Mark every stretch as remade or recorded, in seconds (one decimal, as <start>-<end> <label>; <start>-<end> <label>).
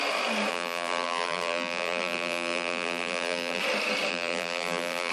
0.0-0.5 recorded; 0.5-3.6 remade; 3.6-4.1 recorded; 4.1-5.1 remade